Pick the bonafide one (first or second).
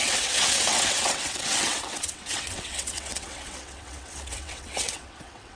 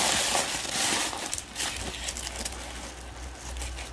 second